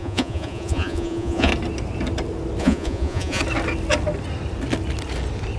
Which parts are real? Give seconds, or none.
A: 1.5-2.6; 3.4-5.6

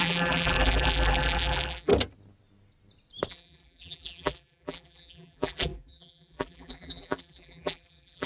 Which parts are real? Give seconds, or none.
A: 1.9-3.3

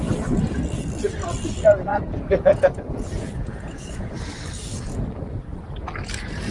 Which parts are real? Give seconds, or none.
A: 0.0-1.9; 4.1-6.5

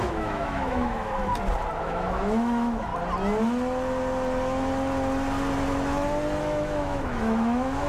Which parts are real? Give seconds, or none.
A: 1.3-1.8; 2.9-6.4

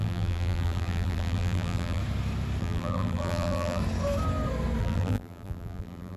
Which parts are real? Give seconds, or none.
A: 2.0-2.6; 3.8-4.8

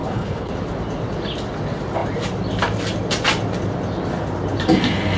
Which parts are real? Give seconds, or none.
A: 0.5-5.2

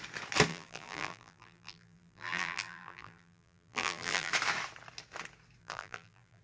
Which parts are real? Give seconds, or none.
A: 0.0-0.5; 4.3-5.6